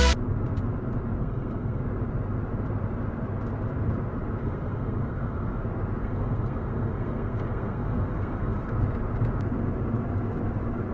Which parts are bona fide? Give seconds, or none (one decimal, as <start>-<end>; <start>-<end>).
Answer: 0.0-1.2; 1.8-4.4; 5.6-6.0; 8.7-10.9